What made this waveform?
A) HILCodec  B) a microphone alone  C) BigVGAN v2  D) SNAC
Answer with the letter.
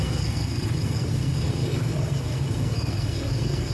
D